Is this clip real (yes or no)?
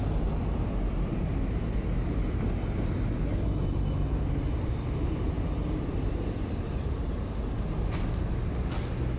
yes